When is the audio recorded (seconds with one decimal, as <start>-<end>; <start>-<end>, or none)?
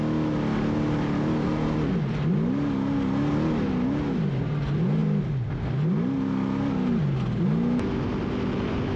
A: 0.0-9.0